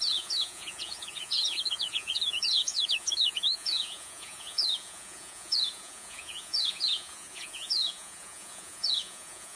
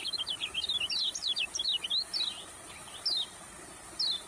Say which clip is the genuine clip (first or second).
second